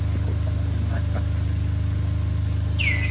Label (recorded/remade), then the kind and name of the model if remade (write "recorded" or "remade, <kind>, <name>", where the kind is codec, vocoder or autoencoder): recorded